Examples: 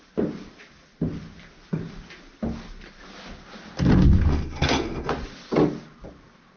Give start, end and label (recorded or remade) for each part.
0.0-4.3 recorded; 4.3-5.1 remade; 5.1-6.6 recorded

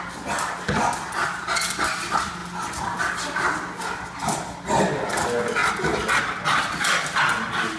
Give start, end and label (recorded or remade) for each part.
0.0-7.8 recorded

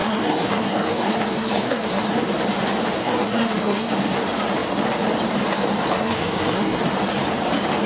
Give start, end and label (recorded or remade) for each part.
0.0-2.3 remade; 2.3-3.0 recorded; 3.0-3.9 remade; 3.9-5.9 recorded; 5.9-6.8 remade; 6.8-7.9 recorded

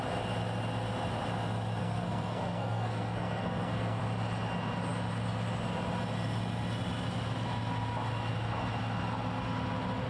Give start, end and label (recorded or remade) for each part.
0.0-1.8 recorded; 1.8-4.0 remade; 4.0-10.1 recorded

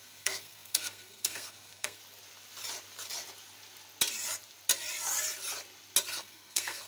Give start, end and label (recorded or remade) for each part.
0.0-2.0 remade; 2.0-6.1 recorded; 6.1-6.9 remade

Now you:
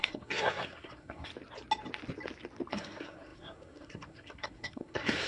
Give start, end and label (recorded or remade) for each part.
0.0-1.3 remade; 1.3-2.7 recorded; 2.7-5.3 remade

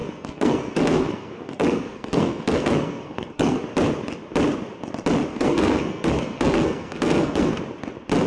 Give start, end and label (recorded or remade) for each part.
0.0-3.6 remade; 3.6-5.3 recorded; 5.3-7.6 remade; 7.6-8.3 recorded

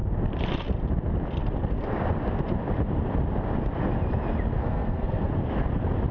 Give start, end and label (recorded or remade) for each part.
0.0-4.6 recorded; 4.6-5.3 remade; 5.3-6.1 recorded